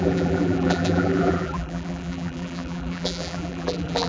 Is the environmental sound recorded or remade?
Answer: remade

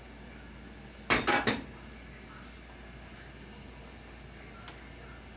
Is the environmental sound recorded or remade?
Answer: recorded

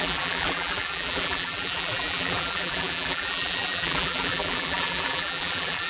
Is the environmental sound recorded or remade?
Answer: remade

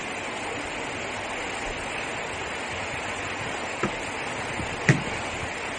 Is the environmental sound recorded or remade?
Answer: recorded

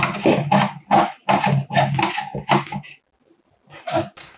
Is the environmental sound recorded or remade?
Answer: recorded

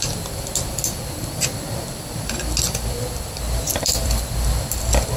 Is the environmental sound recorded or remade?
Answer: remade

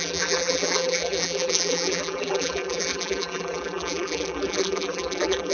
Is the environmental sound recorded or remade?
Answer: remade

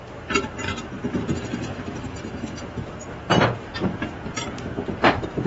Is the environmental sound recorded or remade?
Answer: remade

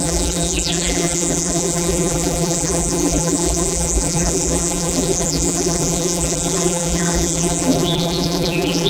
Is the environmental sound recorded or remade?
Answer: remade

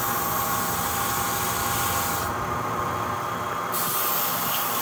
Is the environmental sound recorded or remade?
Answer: recorded